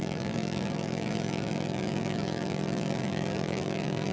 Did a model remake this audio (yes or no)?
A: yes